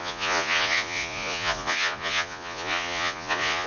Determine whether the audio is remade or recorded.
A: remade